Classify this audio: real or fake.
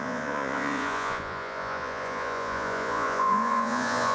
fake